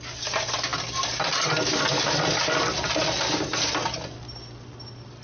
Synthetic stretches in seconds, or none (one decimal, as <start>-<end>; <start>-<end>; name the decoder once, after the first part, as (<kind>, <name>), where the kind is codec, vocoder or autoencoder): none